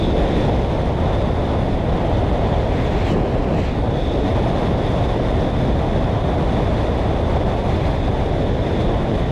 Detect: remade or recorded recorded